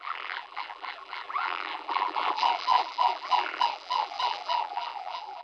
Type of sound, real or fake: fake